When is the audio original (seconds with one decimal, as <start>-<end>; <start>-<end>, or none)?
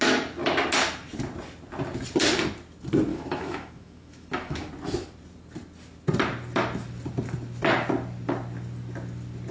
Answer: 0.0-3.1; 4.7-9.5